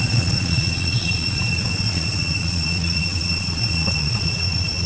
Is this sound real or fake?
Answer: fake